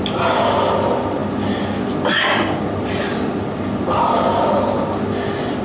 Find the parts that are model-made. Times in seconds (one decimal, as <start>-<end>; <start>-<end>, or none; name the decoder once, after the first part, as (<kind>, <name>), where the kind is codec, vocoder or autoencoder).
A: none